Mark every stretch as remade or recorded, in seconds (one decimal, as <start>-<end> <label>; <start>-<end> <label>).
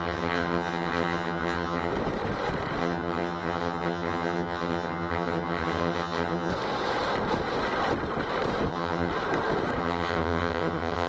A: 0.0-1.9 remade; 1.9-2.8 recorded; 2.8-6.5 remade; 6.5-8.7 recorded; 8.7-9.1 remade; 9.1-9.8 recorded; 9.8-11.1 remade